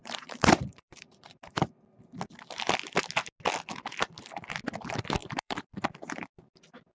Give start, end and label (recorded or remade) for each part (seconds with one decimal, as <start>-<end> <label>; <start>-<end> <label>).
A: 0.0-1.8 remade; 1.8-5.2 recorded; 5.2-5.7 remade; 5.7-6.9 recorded